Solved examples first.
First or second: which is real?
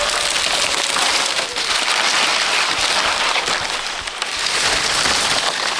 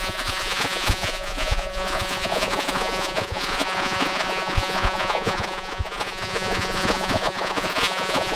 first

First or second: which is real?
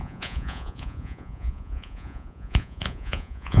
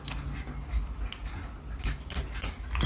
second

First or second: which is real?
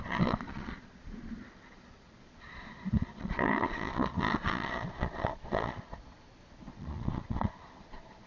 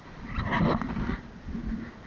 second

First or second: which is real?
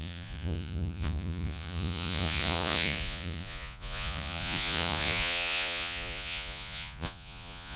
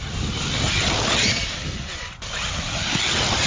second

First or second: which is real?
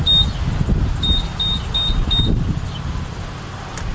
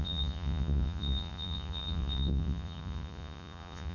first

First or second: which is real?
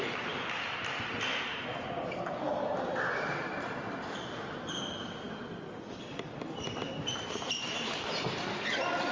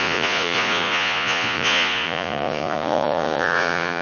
first